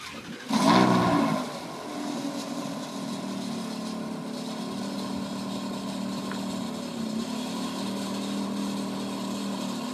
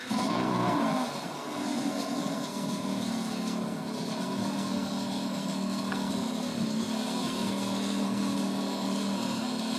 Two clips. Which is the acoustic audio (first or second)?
first